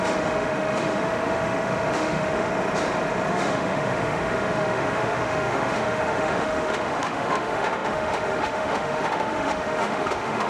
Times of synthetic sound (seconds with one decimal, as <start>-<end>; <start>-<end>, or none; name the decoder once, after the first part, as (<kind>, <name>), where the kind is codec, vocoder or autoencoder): 0.0-2.5 (autoencoder, DAC-VAE); 3.3-10.5